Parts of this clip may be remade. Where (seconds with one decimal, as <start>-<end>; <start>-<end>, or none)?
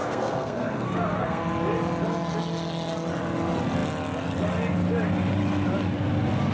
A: 0.0-1.4